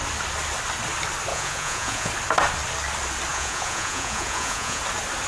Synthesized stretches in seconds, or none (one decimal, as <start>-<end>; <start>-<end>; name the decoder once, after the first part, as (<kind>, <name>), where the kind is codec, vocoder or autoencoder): 1.3-2.1 (vocoder, Vocos); 3.3-4.8